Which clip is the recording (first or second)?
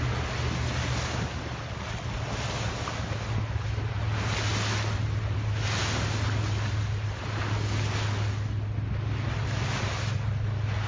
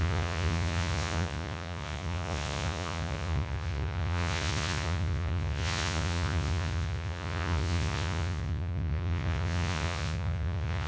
first